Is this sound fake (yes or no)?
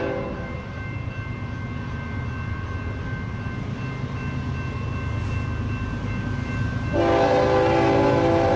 no